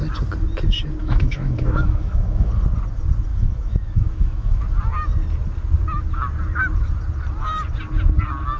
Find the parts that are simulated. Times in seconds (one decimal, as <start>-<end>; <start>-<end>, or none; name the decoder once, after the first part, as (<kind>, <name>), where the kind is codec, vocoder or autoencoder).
1.0-2.5 (autoencoder, DAC-VAE); 3.3-4.6